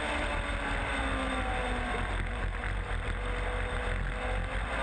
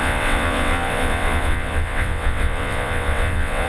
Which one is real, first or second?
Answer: first